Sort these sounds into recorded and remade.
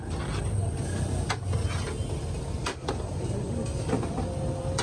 recorded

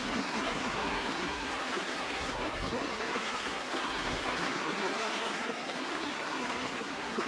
remade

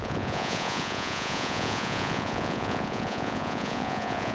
remade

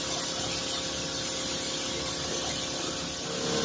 recorded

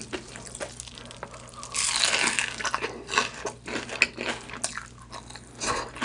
recorded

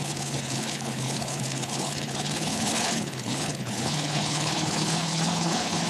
remade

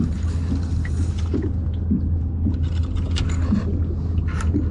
recorded